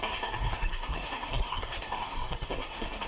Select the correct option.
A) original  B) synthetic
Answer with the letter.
B